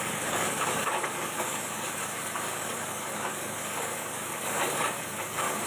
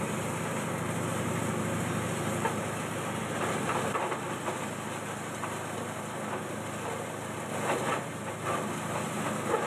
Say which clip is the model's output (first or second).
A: first